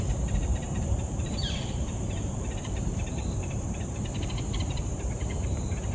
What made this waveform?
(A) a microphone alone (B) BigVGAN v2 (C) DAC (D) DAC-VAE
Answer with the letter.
B